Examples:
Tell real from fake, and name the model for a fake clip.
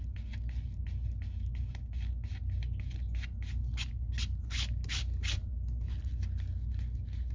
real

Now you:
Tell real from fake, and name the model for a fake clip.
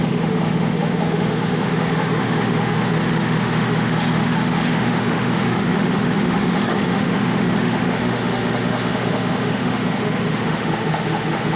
fake, autoencoder, DAC-VAE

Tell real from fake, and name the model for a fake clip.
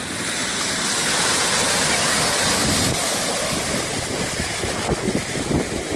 real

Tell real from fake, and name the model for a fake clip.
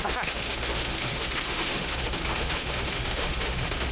fake, autoencoder, DAC-VAE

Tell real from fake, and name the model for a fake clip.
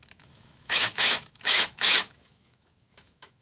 fake, autoencoder, DAC-VAE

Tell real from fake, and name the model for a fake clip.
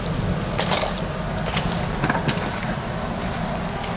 real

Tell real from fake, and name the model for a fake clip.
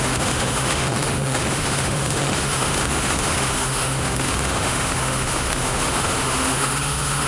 fake, autoencoder, DAC-VAE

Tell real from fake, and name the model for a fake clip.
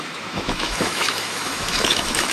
fake, autoencoder, DAC-VAE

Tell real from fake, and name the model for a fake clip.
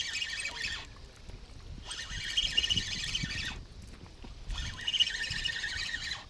real